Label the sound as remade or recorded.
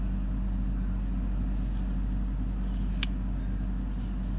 recorded